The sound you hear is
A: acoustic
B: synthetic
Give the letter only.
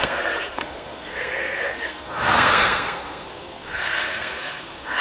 B